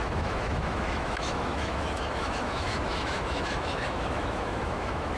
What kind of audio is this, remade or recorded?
remade